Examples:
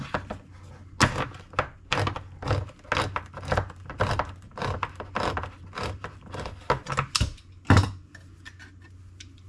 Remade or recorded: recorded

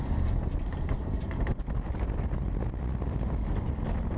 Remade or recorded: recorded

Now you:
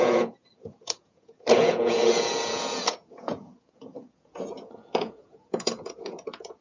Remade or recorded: remade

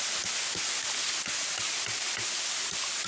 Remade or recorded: recorded